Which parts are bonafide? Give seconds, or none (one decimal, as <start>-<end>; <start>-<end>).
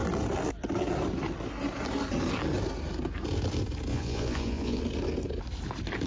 0.0-3.9; 4.8-6.1